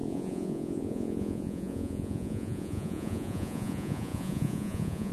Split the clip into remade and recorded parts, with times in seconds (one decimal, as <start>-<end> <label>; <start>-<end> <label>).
0.0-5.1 remade